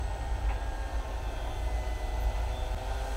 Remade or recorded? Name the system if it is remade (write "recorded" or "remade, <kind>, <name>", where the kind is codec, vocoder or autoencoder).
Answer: recorded